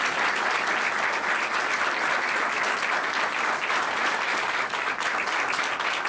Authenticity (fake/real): real